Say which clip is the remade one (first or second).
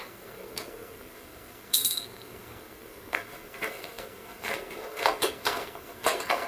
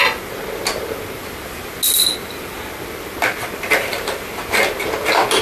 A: first